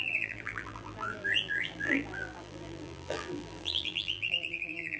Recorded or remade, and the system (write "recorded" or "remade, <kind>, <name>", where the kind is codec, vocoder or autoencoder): remade, vocoder, BigVGAN v2